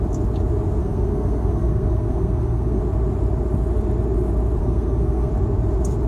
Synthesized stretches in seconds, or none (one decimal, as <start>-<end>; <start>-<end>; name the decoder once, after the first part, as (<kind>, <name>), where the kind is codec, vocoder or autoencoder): 0.8-2.8 (codec, SNAC); 4.6-5.3